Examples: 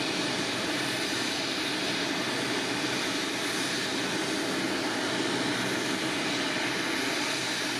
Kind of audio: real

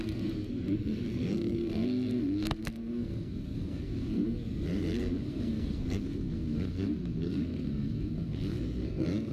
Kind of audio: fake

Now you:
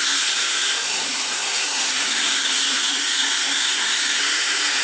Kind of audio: fake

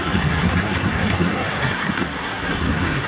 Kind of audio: fake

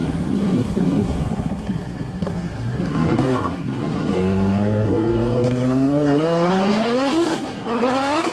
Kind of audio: fake